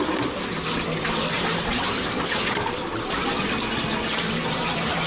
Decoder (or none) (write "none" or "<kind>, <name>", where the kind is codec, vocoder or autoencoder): none